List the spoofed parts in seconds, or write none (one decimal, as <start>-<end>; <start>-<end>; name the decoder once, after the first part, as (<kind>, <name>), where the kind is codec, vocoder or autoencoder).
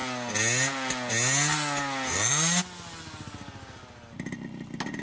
none